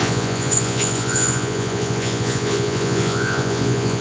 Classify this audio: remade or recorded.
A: remade